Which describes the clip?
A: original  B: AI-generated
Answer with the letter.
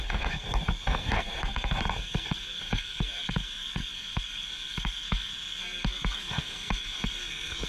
B